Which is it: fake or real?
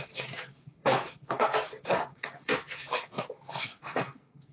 fake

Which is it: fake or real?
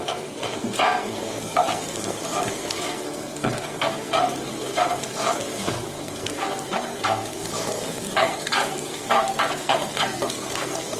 fake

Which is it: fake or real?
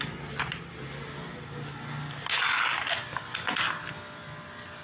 real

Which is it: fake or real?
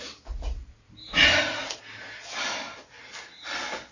real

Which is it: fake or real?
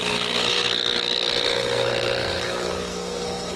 fake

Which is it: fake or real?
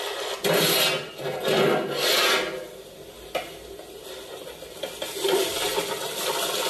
real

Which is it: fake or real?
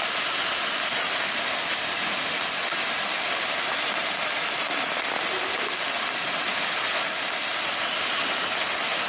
real